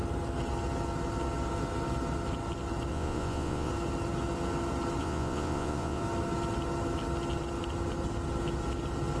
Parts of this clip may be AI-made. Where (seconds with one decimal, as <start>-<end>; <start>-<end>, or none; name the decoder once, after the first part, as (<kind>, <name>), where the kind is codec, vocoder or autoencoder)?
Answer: 2.9-3.7 (vocoder, Vocos); 5.0-6.0